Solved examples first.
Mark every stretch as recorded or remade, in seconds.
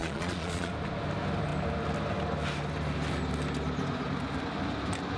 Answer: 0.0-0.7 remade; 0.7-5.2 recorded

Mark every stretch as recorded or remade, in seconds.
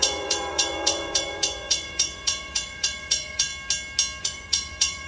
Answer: 0.0-3.5 remade; 3.5-4.2 recorded; 4.2-5.1 remade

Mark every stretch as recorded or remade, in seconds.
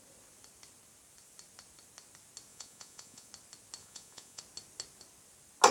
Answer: 0.0-2.5 recorded; 2.5-3.3 remade; 3.3-3.8 recorded; 3.8-4.4 remade; 4.4-5.7 recorded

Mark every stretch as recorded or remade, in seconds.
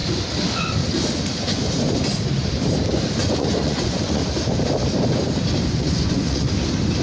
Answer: 0.0-3.2 recorded; 3.2-4.2 remade; 4.2-5.8 recorded; 5.8-6.5 remade; 6.5-7.0 recorded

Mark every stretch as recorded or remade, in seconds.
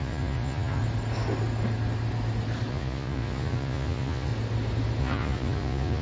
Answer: 0.0-0.8 remade; 0.8-2.7 recorded; 2.7-4.3 remade; 4.3-5.0 recorded; 5.0-6.0 remade